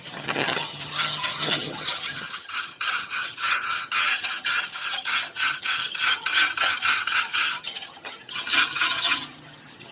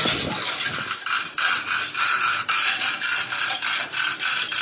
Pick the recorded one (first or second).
second